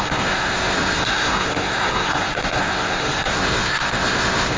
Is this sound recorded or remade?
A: remade